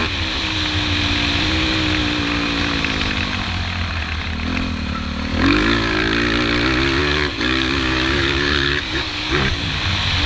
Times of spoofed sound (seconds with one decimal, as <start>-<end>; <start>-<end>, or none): 5.3-6.0; 7.0-9.7